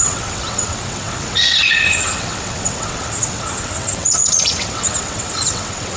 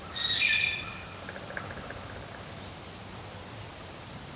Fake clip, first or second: first